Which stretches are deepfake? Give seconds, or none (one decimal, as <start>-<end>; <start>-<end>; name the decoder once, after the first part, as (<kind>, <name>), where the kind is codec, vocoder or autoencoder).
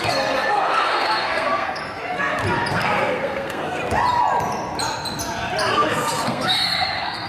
0.0-1.8 (codec, SNAC); 2.7-3.8; 5.7-7.3